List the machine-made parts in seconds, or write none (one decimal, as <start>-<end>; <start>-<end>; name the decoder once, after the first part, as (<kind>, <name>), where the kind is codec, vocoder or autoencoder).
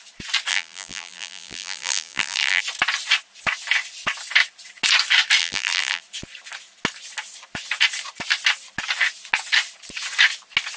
0.5-2.6 (vocoder, BigVGAN v2); 5.4-6.0